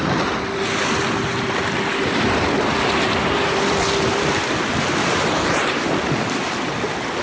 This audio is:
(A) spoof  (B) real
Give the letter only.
B